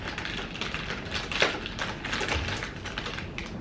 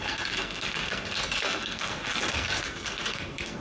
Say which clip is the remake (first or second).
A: second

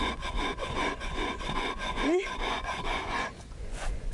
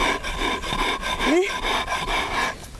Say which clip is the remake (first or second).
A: first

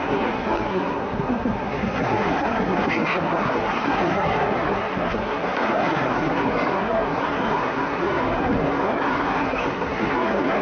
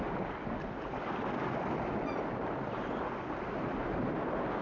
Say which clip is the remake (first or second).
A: first